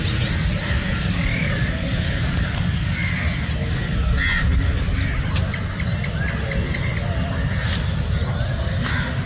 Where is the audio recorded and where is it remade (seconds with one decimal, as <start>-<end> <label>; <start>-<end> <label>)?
0.0-1.4 recorded; 1.4-3.1 remade; 3.1-9.3 recorded